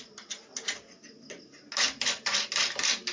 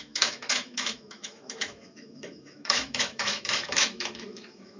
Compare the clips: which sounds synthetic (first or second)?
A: second